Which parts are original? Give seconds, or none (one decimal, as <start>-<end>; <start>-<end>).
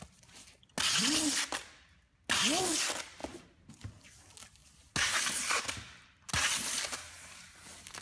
0.0-8.0